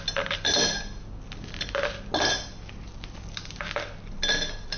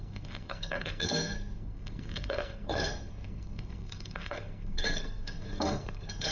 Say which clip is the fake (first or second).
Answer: second